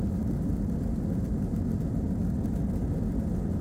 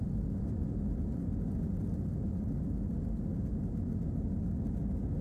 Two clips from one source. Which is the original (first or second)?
second